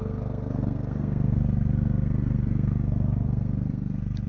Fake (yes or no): yes